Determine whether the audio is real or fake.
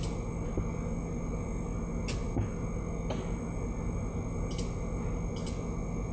real